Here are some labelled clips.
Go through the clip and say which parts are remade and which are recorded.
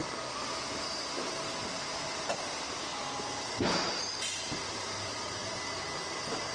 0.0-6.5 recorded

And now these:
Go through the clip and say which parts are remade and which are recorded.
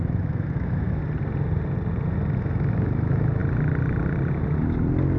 0.0-1.0 remade; 1.0-2.4 recorded; 2.4-3.4 remade; 3.4-5.2 recorded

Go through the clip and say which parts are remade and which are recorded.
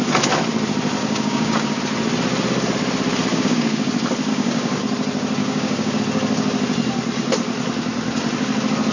0.0-1.0 recorded; 1.0-1.8 remade; 1.8-3.3 recorded; 3.3-3.9 remade; 3.9-4.3 recorded; 4.3-4.8 remade; 4.8-5.4 recorded; 5.4-6.0 remade; 6.0-8.9 recorded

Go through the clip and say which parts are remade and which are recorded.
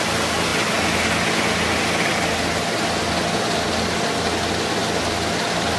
0.0-5.8 recorded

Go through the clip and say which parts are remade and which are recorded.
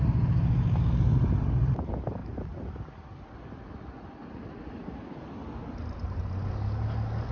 0.0-7.3 recorded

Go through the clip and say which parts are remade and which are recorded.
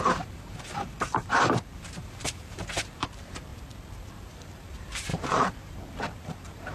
0.0-3.5 remade; 3.5-4.1 recorded; 4.1-6.7 remade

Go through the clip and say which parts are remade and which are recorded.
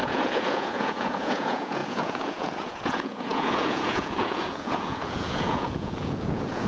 0.0-6.7 remade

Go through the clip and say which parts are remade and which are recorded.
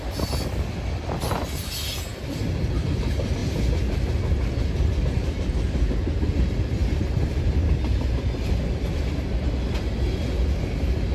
0.0-11.1 recorded